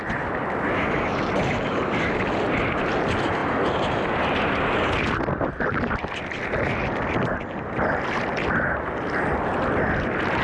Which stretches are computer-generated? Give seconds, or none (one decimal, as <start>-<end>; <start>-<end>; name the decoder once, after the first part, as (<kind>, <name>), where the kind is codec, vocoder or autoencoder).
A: none